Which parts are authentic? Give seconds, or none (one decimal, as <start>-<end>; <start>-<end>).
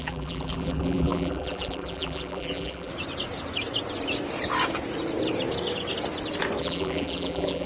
2.9-6.6